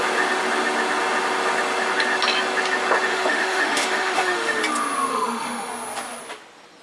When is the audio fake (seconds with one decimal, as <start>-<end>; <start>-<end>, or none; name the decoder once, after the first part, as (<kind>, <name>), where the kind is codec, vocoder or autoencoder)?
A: 3.1-4.6 (autoencoder, DAC-VAE); 5.1-5.7